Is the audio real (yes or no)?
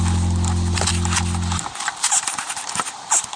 yes